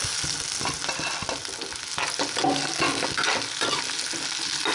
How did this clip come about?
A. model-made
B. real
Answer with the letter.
B